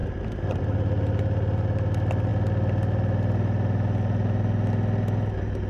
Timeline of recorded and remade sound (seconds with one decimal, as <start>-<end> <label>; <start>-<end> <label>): 0.0-5.7 recorded